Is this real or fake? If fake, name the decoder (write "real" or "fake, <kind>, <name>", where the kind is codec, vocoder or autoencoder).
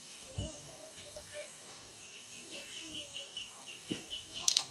fake, codec, DAC